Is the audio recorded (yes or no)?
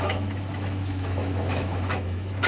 no